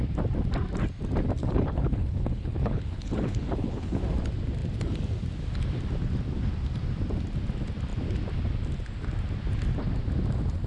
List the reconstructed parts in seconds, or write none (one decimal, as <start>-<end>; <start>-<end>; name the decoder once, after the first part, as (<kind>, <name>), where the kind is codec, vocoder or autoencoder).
1.4-4.0 (codec, HILCodec)